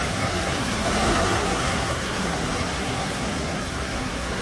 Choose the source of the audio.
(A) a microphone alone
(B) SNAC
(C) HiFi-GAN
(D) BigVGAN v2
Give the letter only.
B